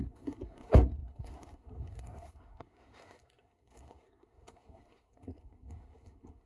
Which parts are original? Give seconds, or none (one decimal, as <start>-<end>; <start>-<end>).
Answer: none